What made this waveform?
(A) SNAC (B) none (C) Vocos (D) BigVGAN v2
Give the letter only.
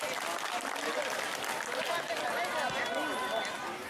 B